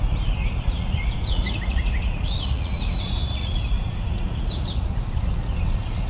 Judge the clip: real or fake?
fake